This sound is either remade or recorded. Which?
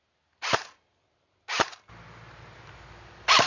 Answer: recorded